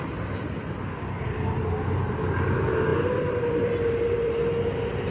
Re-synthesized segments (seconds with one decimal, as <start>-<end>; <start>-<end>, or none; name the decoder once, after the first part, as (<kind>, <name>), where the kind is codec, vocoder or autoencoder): none